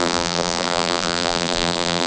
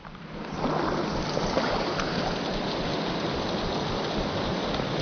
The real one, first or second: second